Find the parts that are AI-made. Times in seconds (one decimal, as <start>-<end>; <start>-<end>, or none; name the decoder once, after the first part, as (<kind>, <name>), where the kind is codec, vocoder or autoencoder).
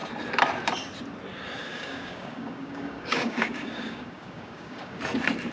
1.7-5.0 (codec, DAC)